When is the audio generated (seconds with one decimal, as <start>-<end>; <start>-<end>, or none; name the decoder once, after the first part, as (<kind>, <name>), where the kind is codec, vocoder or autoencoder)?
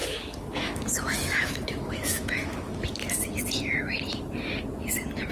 0.0-2.7 (autoencoder, DAC-VAE)